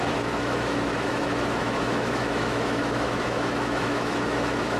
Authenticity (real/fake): fake